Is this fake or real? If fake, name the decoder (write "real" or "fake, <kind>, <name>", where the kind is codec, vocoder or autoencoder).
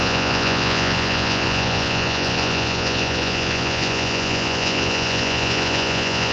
fake, vocoder, Vocos